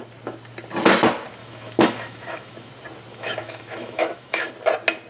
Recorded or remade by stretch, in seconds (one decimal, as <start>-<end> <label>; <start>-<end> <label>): 0.0-1.4 recorded; 1.4-2.7 remade; 2.7-3.1 recorded; 3.1-4.5 remade; 4.5-5.1 recorded